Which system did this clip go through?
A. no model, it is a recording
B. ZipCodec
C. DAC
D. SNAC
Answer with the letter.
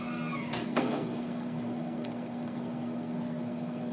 D